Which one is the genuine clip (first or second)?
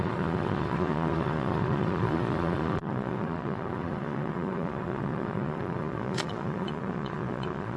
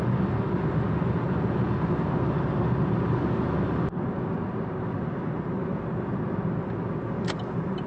second